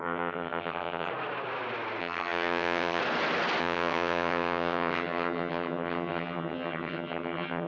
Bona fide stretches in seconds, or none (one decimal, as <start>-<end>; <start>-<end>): 1.1-2.0; 3.0-3.6